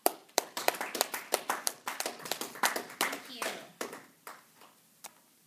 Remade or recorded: remade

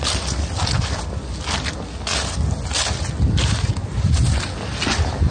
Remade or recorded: recorded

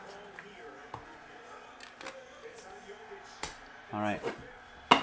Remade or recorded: recorded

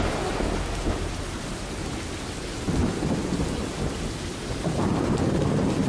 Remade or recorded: recorded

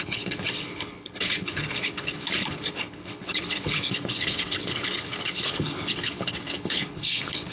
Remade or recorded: remade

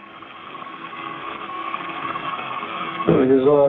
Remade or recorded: remade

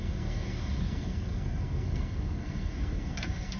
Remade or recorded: remade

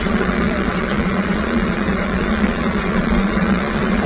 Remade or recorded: remade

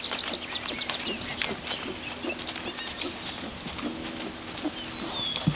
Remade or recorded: recorded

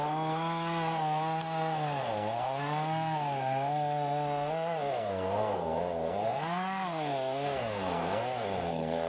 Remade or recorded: remade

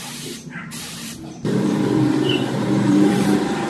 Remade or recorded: remade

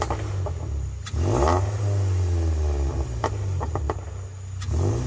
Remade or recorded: recorded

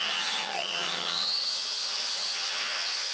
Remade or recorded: remade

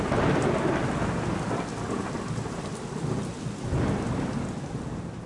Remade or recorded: recorded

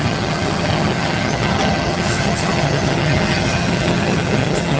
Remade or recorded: remade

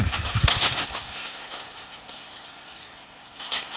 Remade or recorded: remade